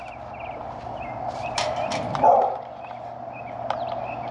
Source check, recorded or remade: recorded